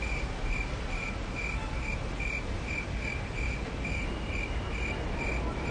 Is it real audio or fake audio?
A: real